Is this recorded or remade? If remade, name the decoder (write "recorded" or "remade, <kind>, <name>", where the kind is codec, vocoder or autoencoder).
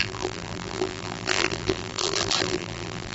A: remade, vocoder, BigVGAN v2